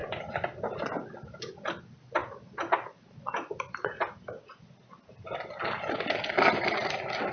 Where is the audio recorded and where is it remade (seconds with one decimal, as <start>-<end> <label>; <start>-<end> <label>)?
0.0-7.3 recorded